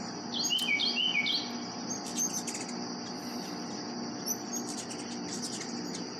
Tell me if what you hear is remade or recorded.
recorded